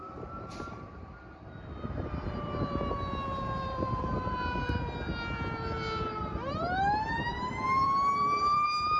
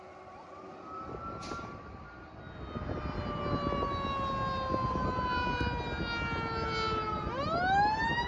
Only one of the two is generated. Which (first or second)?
first